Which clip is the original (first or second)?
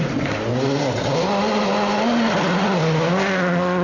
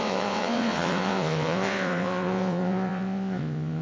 first